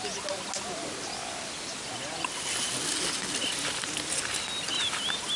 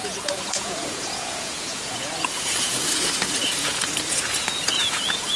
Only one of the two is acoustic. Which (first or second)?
first